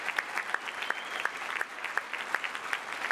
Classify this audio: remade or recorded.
recorded